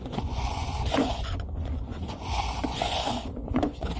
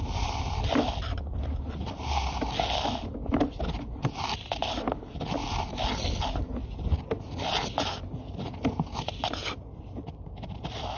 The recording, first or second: second